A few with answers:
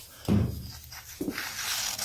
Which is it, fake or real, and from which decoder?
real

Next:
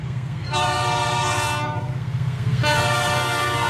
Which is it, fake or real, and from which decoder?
fake, codec, SNAC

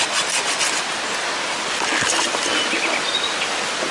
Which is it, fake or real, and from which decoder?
real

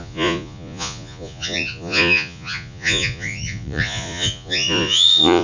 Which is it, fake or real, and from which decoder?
fake, vocoder, Vocos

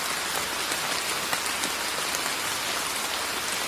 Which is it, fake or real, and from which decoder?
real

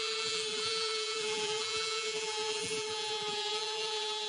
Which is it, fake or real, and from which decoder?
fake, vocoder, BigVGAN v2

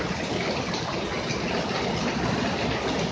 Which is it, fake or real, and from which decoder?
real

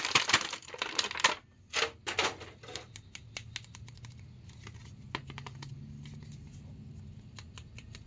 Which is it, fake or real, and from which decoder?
real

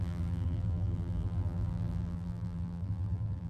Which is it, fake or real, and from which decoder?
fake, vocoder, BigVGAN v2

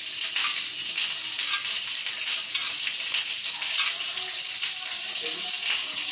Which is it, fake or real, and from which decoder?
real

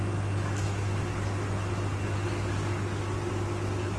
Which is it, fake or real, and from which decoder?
real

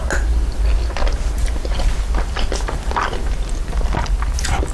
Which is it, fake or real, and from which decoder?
real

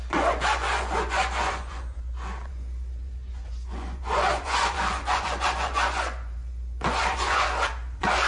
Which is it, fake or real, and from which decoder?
fake, vocoder, Vocos